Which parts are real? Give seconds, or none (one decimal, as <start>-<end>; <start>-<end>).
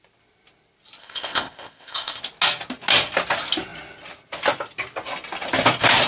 0.0-1.0; 2.2-6.1